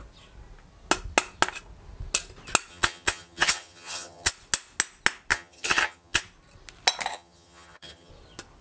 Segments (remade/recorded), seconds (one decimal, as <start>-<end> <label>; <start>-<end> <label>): 0.0-2.7 recorded; 2.7-4.3 remade; 4.3-5.3 recorded; 5.3-6.2 remade; 6.2-7.1 recorded; 7.1-8.1 remade; 8.1-8.6 recorded